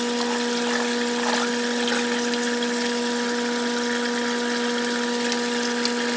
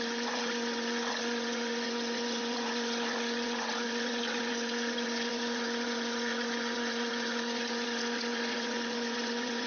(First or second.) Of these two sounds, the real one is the first